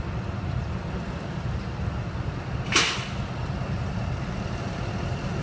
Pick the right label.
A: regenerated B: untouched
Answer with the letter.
B